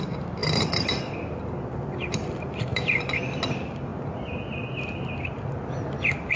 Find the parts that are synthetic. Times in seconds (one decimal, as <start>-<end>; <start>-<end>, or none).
0.4-3.1